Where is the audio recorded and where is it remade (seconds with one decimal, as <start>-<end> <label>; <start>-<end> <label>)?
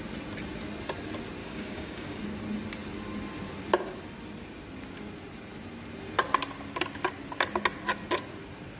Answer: 0.0-1.4 recorded; 1.4-2.2 remade; 2.2-8.8 recorded